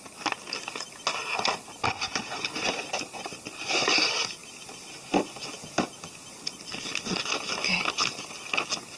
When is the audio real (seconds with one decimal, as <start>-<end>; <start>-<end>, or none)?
0.0-9.0